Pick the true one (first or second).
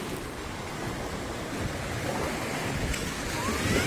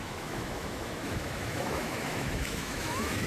first